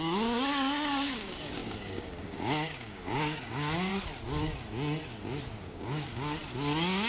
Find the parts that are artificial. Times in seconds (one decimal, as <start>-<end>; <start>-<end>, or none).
0.0-3.9; 5.6-6.4